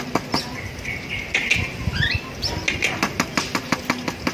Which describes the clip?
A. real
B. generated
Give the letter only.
A